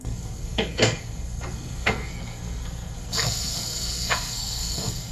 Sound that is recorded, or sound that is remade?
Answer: remade